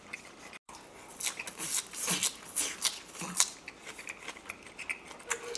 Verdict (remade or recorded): recorded